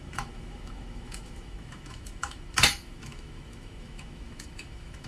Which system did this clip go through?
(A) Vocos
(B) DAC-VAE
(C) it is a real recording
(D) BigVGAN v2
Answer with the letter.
B